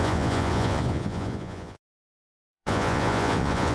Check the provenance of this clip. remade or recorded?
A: remade